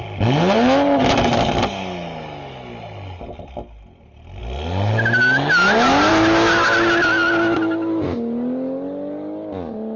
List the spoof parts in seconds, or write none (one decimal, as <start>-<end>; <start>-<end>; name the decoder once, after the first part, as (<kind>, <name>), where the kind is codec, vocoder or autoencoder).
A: none